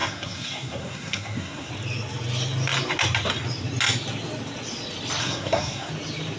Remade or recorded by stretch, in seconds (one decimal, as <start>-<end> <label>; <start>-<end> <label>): 0.0-1.7 remade; 1.7-5.2 recorded; 5.2-5.9 remade; 5.9-6.4 recorded